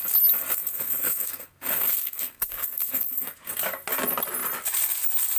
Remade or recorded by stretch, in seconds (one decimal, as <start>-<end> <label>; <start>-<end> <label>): 0.0-0.6 recorded; 0.6-3.5 remade; 3.5-5.4 recorded